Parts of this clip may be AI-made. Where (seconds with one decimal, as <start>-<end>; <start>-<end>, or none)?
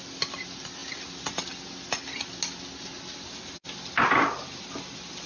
none